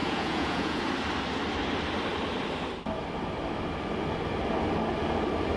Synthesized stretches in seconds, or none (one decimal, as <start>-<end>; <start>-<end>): 0.0-0.8